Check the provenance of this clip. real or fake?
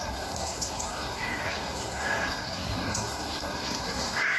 fake